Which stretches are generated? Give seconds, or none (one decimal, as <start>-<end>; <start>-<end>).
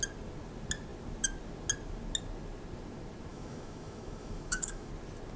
3.3-4.9